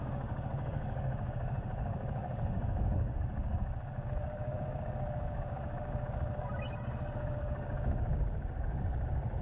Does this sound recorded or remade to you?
remade